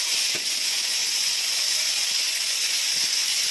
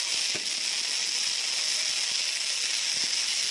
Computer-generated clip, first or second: first